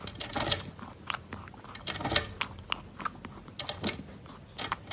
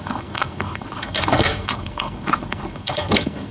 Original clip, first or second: first